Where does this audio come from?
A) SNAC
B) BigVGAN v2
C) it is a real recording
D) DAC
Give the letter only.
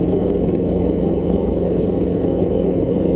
A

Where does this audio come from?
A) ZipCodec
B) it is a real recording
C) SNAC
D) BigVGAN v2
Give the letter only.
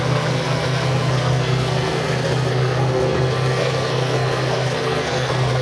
C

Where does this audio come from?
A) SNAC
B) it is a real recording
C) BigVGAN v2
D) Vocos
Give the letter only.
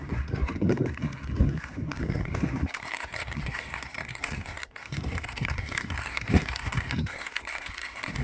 A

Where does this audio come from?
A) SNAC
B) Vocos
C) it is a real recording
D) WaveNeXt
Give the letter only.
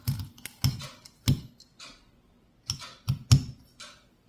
C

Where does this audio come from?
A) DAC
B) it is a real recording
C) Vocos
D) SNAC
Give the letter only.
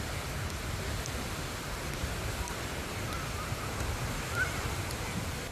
B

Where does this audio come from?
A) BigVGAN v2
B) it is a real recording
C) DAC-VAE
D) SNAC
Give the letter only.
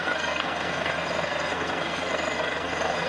D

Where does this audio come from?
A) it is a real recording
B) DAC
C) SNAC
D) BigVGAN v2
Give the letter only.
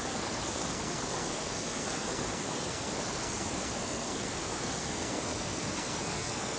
C